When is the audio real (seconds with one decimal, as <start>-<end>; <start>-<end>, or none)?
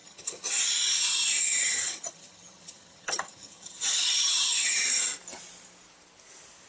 0.6-1.4; 5.0-6.7